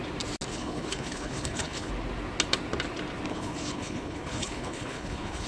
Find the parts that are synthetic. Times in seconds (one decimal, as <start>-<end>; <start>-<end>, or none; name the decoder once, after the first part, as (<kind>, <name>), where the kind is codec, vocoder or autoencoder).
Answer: 0.5-1.9 (codec, HILCodec); 3.3-5.5